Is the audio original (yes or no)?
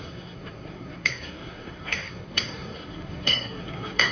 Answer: no